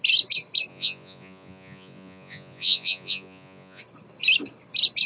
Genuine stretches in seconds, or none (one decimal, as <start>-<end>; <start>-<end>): 0.0-0.7; 3.8-5.1